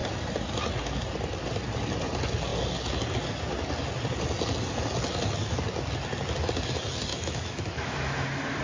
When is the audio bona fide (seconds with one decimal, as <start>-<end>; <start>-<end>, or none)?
0.0-7.1